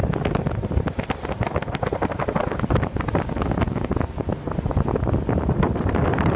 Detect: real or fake real